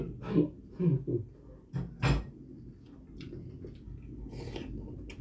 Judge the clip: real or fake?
real